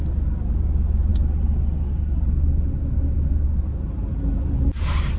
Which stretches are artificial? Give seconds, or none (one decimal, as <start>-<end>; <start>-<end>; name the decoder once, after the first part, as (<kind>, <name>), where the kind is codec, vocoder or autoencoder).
none